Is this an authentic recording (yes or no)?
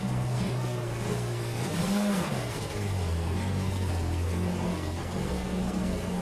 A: no